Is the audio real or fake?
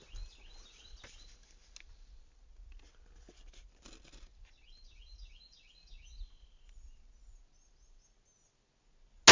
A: real